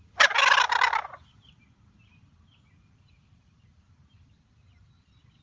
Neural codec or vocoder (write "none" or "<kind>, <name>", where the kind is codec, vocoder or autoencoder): vocoder, BigVGAN v2